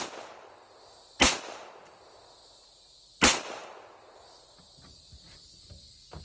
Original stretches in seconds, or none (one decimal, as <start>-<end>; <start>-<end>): 0.0-6.2